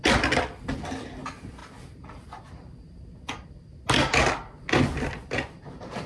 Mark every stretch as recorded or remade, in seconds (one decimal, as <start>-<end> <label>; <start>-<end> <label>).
0.0-6.1 recorded